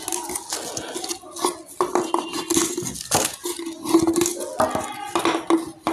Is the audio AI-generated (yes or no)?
no